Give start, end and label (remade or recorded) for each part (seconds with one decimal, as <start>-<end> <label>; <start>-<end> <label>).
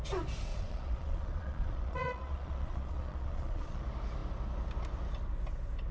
0.0-0.5 recorded; 0.5-3.8 remade; 3.8-5.9 recorded